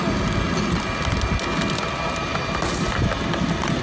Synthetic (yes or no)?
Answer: no